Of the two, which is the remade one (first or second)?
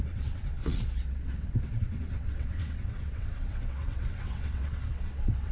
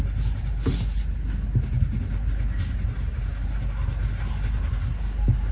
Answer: first